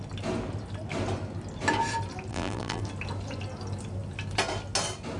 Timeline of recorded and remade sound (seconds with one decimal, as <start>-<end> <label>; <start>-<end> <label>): 0.0-2.3 recorded; 2.3-2.8 remade; 2.8-5.2 recorded